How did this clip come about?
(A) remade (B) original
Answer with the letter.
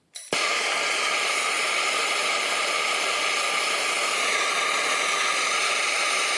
B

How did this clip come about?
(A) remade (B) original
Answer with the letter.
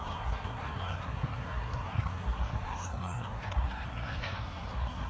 A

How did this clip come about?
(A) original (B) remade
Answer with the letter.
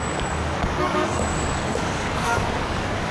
B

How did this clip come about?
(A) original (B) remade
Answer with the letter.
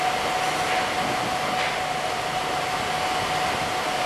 A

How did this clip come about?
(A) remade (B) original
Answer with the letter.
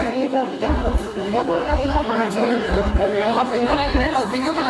A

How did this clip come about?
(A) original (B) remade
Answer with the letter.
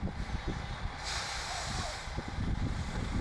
B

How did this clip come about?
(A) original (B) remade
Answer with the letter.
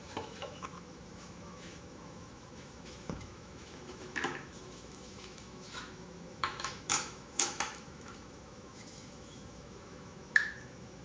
B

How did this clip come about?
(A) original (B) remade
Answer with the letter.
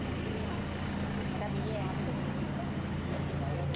A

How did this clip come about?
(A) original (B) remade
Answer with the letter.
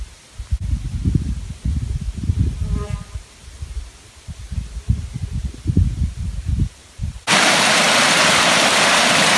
A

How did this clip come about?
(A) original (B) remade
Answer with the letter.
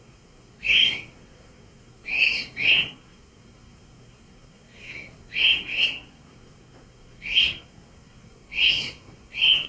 B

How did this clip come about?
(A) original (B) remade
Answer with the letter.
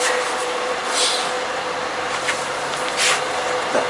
A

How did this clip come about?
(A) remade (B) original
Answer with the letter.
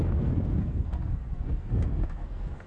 A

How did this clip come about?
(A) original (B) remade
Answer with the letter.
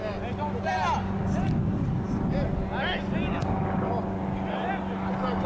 A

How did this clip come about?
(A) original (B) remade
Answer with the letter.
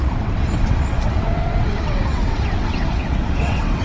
B